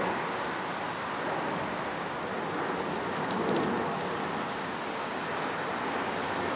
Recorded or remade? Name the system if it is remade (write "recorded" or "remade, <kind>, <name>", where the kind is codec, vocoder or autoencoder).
recorded